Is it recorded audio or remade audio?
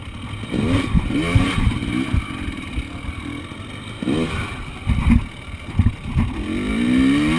recorded